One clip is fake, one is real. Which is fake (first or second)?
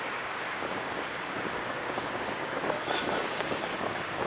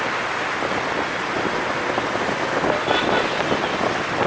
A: first